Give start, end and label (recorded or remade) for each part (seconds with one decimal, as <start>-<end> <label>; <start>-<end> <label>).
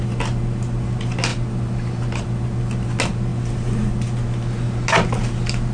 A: 0.0-5.7 recorded